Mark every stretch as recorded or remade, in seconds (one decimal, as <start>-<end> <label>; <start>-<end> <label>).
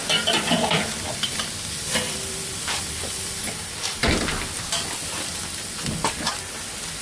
0.0-4.2 remade; 4.2-7.0 recorded